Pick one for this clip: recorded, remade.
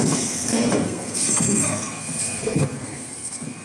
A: remade